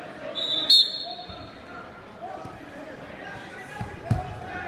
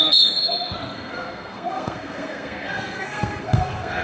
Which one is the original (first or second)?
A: first